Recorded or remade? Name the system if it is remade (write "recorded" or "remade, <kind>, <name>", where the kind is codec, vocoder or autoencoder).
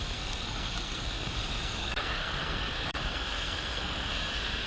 remade, codec, SNAC